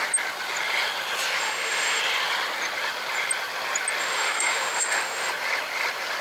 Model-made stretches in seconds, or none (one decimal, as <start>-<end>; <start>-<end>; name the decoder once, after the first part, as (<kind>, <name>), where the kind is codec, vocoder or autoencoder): 1.4-2.0 (autoencoder, DAC-VAE); 4.0-5.3